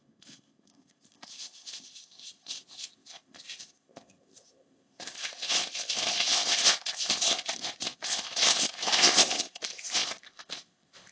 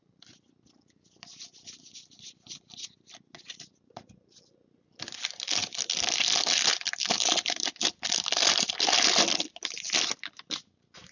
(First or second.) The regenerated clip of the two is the first